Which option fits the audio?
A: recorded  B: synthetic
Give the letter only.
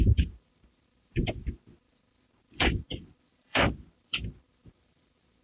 B